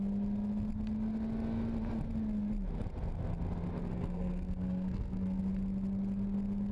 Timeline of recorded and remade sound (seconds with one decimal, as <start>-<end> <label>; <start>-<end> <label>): 0.0-3.9 recorded; 3.9-5.4 remade; 5.4-6.7 recorded